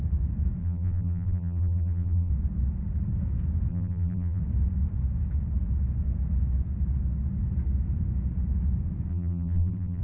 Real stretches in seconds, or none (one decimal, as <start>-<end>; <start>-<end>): 0.0-0.6; 2.3-3.7; 4.4-9.1